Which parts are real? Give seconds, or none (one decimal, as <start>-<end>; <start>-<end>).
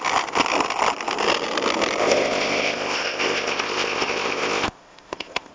0.0-2.0